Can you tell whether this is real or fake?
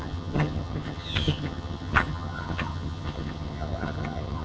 fake